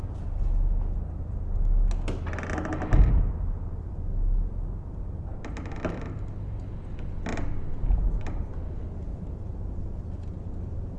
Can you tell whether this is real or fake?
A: real